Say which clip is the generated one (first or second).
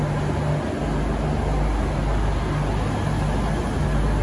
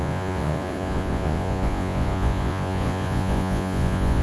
second